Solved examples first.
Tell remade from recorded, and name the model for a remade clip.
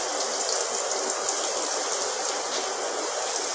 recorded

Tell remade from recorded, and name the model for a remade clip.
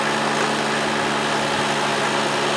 recorded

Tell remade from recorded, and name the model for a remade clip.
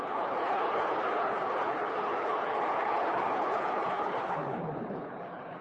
remade, codec, HILCodec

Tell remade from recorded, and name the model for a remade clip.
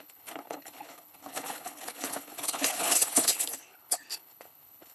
remade, codec, HILCodec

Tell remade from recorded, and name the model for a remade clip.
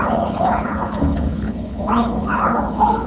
remade, codec, HILCodec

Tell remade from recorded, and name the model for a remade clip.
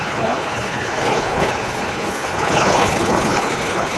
remade, codec, HILCodec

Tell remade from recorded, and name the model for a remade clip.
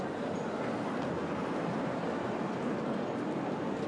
recorded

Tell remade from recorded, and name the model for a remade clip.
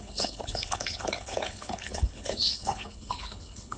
remade, codec, HILCodec